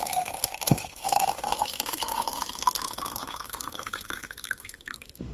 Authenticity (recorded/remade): remade